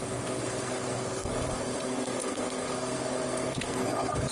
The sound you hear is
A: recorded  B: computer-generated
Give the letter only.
B